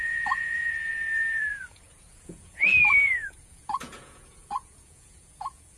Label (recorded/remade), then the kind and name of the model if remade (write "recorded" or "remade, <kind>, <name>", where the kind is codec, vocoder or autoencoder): remade, vocoder, Vocos